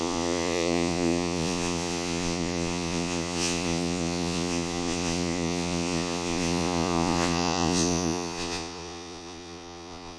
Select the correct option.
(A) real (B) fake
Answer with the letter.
B